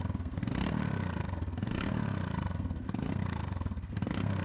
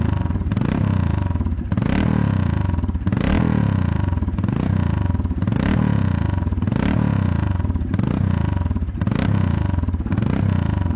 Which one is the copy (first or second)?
first